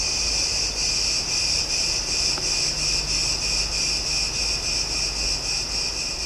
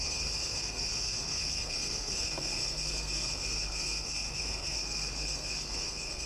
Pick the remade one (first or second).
second